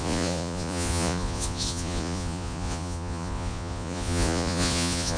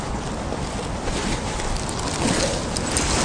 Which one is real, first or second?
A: second